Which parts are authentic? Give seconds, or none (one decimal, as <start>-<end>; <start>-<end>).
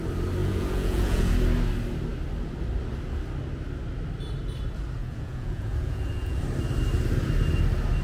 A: 0.0-0.4; 1.3-5.0; 6.4-8.0